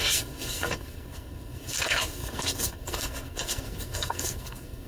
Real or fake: fake